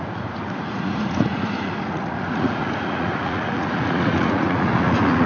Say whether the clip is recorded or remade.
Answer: remade